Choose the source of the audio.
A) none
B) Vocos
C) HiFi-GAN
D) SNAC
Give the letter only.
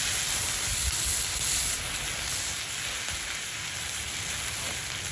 A